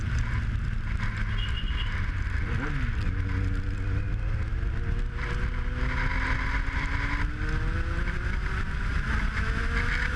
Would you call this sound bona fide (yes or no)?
yes